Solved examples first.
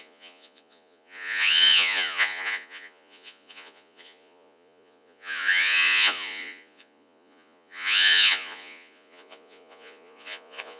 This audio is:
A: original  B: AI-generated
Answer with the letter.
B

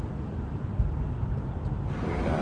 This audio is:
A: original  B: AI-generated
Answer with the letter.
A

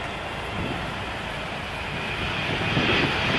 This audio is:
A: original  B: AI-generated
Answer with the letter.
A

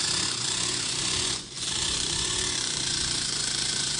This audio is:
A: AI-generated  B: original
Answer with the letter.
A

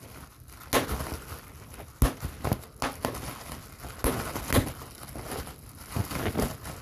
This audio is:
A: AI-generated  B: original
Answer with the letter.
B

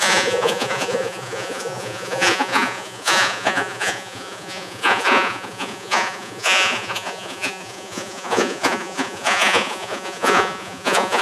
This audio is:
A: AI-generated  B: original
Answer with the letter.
A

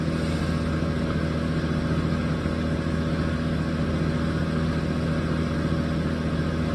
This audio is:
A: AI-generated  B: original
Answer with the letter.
B